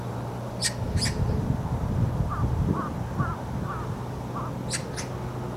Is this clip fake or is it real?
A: real